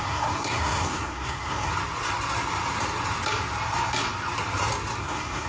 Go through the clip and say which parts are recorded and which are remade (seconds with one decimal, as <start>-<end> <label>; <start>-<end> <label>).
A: 0.0-1.7 remade; 1.7-5.0 recorded; 5.0-5.5 remade